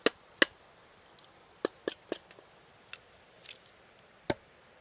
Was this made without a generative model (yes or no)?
yes